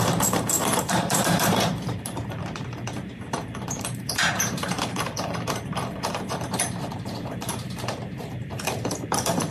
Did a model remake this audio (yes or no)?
yes